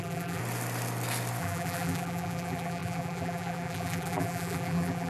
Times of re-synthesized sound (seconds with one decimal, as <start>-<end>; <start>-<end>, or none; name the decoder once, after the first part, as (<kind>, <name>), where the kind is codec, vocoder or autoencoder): 0.0-0.4 (vocoder, BigVGAN v2); 1.4-5.1